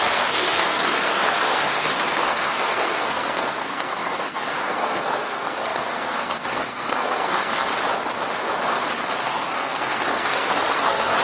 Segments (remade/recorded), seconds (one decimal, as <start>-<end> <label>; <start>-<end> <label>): 0.0-7.7 remade; 7.7-9.2 recorded; 9.2-11.2 remade